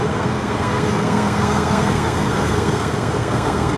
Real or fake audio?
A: fake